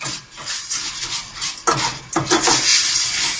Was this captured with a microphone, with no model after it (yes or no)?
yes